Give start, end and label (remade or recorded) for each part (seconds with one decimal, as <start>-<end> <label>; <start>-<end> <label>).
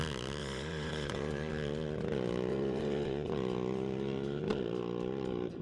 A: 0.0-0.4 recorded; 0.4-1.5 remade; 1.5-2.5 recorded; 2.5-3.3 remade; 3.3-5.6 recorded